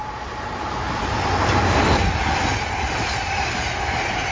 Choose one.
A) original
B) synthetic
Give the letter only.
A